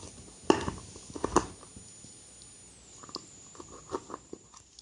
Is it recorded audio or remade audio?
recorded